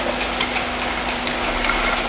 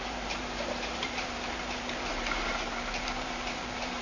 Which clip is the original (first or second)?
first